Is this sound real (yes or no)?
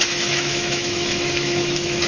no